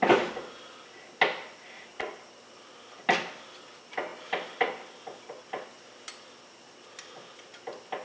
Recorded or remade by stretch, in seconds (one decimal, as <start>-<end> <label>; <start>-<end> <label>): 0.0-8.0 recorded